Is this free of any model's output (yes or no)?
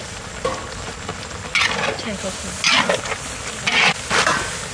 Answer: yes